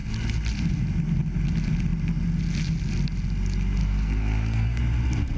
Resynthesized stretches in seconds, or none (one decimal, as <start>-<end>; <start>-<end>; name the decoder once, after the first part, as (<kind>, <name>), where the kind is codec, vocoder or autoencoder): 3.8-4.8 (codec, SNAC)